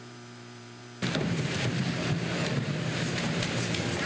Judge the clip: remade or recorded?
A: remade